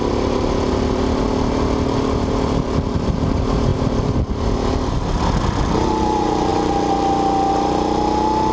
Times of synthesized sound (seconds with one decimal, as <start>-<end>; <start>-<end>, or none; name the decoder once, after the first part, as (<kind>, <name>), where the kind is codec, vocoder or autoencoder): none